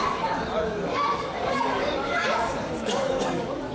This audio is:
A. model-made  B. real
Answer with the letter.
A